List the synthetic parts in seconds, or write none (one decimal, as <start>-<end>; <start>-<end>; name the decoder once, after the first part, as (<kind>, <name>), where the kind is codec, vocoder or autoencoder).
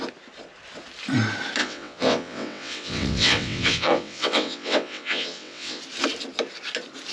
1.6-5.8 (vocoder, WaveNeXt)